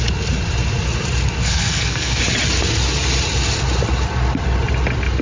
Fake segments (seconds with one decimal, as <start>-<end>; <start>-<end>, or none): 1.4-2.2